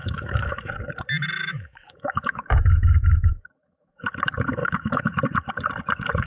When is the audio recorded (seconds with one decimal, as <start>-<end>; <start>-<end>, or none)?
0.7-1.4; 4.0-4.6; 5.2-6.3